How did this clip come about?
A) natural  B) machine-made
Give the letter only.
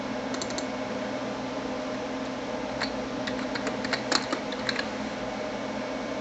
A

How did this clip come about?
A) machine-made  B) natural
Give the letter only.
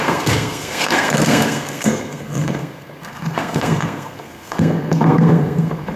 A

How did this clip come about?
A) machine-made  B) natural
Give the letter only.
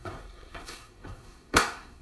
A